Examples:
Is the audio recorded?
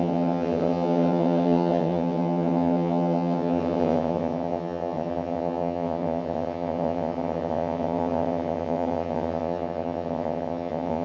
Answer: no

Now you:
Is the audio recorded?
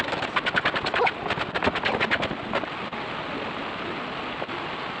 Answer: yes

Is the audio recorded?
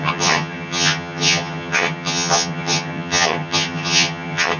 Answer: no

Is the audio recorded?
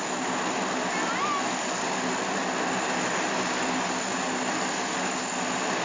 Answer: yes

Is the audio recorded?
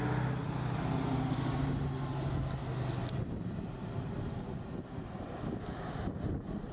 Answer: yes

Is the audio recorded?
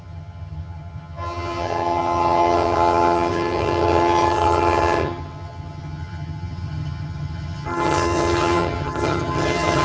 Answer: no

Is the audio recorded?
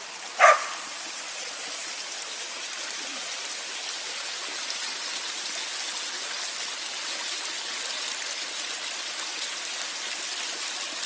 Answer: yes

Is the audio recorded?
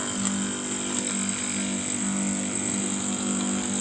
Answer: yes